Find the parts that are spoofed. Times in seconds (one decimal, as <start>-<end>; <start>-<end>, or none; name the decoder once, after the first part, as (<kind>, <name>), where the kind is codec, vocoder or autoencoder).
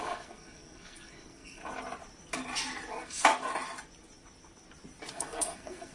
0.0-1.6 (codec, SNAC); 2.9-3.3; 5.1-5.9